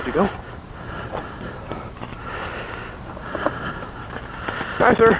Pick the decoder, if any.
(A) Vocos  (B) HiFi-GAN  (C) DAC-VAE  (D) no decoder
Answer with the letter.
D